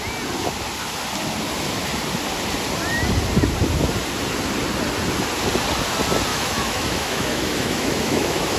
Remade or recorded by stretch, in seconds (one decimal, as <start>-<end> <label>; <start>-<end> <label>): 0.0-6.3 recorded; 6.3-8.6 remade